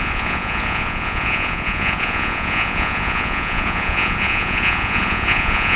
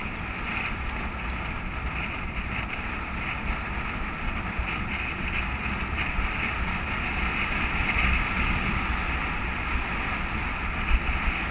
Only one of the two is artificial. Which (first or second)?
first